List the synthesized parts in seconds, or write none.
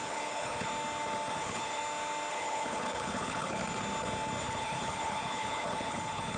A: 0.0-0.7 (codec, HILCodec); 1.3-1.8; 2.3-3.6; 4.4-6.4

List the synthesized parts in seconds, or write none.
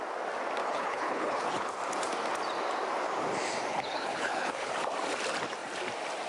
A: 0.6-1.7 (codec, HILCodec); 3.7-4.7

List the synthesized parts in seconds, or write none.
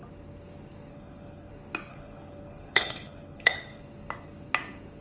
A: 0.9-1.5 (codec, HILCodec); 1.9-3.8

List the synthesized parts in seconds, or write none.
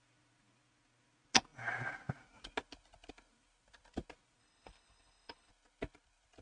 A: 4.4-5.5 (codec, HILCodec)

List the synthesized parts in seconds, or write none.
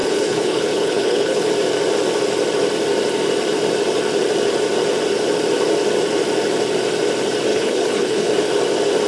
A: 0.0-1.5 (codec, HILCodec); 7.5-8.3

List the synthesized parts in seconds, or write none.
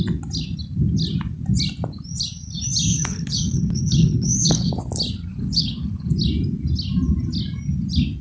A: 2.9-4.7 (codec, HILCodec); 5.3-6.1